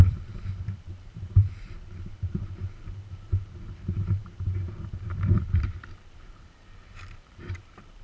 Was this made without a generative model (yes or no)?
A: no